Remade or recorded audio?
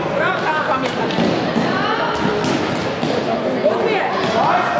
recorded